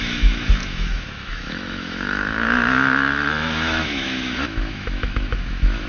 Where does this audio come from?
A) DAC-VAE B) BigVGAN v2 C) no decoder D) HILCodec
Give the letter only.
A